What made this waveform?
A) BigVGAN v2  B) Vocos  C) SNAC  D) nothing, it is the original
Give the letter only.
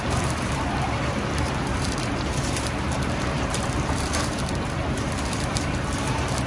A